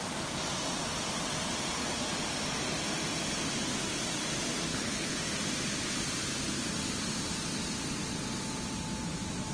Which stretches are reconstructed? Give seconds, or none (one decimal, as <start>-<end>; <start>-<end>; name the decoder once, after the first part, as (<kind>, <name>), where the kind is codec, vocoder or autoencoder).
4.7-5.2 (codec, HILCodec)